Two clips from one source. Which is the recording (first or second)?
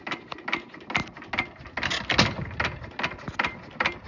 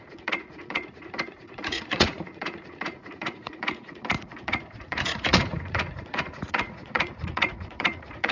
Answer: first